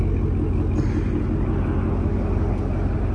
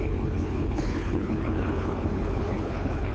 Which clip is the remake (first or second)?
second